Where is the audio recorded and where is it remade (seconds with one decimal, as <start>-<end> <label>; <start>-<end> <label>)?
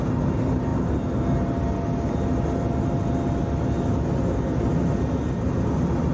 0.0-6.1 recorded